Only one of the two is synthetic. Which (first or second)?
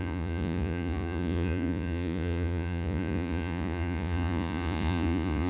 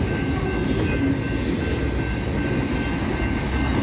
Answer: first